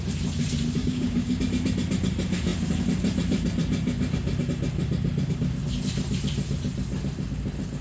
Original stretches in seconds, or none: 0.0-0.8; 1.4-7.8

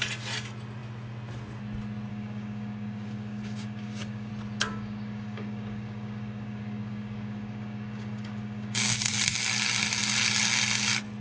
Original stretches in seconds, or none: 0.0-2.1; 4.3-4.7; 9.1-11.2

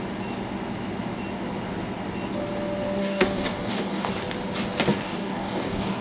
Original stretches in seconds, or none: 0.0-3.0; 4.1-4.9

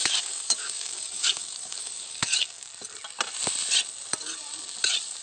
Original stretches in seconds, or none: 2.7-5.2

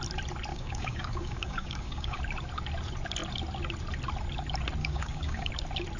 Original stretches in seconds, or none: 0.0-0.5; 2.2-4.8; 5.5-6.0

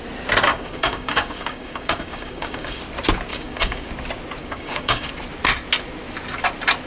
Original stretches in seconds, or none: 0.0-0.5; 2.8-3.3; 3.9-4.4; 5.1-6.9